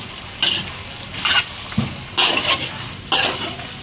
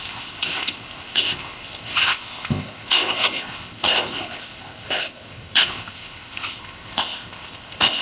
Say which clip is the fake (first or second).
second